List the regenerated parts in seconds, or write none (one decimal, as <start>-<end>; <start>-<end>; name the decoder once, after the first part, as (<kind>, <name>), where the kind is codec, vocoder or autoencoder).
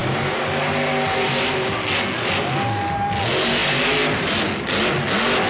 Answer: 0.0-0.6 (codec, DAC)